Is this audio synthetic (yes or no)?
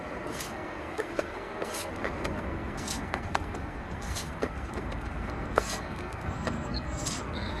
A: yes